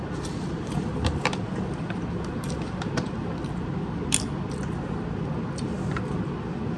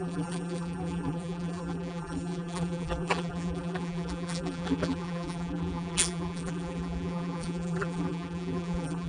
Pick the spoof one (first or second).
second